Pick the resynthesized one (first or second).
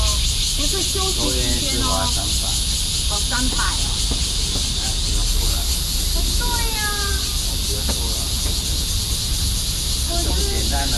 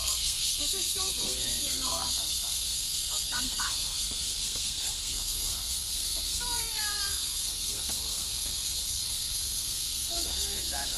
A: second